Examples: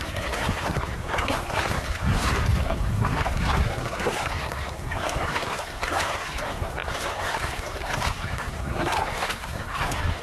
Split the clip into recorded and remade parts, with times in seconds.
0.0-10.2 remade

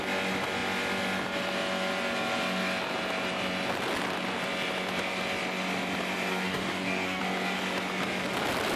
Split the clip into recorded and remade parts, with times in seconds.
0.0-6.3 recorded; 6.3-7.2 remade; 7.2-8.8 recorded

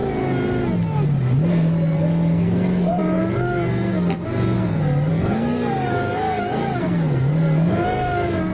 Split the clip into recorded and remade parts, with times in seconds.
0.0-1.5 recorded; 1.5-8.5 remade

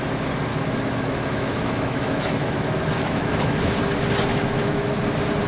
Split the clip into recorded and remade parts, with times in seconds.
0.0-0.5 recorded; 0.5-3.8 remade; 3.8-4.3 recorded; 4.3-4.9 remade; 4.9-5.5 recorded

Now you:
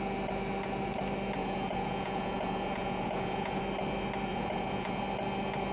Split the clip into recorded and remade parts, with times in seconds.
0.0-1.4 recorded; 1.4-3.6 remade; 3.6-4.3 recorded; 4.3-5.0 remade; 5.0-5.7 recorded

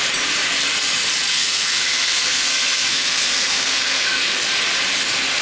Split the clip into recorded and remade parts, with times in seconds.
0.0-1.3 recorded; 1.3-4.5 remade; 4.5-5.4 recorded